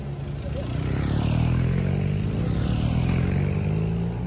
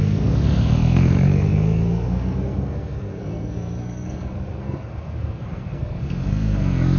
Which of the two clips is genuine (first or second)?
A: first